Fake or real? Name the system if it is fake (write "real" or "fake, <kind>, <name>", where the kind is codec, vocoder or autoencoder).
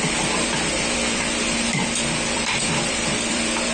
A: fake, vocoder, BigVGAN v2